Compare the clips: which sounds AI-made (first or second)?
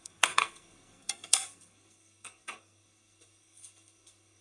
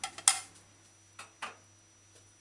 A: first